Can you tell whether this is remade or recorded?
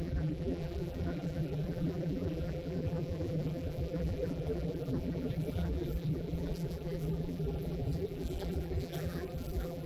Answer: remade